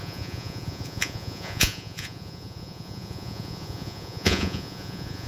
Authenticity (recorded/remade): remade